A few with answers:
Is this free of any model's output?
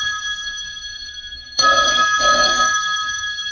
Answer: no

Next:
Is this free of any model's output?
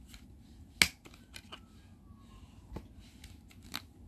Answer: yes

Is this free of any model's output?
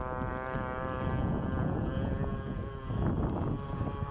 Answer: yes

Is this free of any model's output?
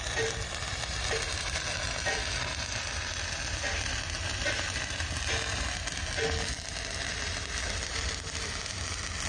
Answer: yes